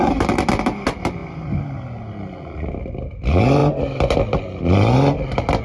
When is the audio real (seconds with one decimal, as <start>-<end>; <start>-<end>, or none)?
0.0-1.2; 1.8-5.6